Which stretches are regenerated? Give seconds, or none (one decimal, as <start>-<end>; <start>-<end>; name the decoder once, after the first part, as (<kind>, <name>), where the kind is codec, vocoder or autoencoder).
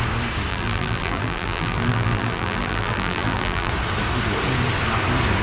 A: 0.5-3.7 (vocoder, BigVGAN v2)